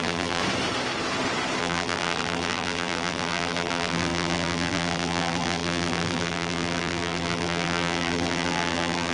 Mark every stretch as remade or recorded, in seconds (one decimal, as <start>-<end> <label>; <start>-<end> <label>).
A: 0.0-0.4 remade; 0.4-1.6 recorded; 1.6-9.1 remade